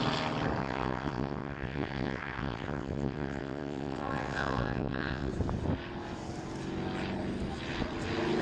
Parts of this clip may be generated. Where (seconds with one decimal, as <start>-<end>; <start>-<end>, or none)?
0.6-5.3